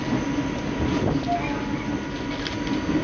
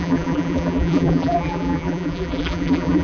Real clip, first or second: first